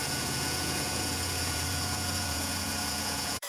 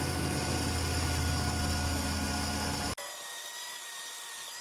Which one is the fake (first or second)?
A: first